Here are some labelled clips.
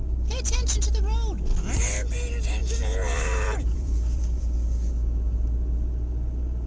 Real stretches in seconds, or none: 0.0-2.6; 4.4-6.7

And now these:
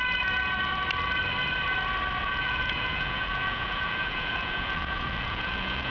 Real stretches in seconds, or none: 0.0-2.2

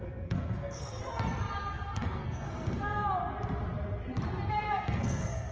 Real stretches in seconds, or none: 1.0-1.6; 3.0-4.5